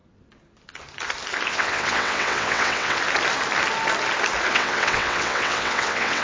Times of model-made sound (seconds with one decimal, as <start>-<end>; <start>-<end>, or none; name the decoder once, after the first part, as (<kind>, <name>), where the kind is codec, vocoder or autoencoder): 1.5-3.0 (vocoder, WaveNeXt); 4.5-6.2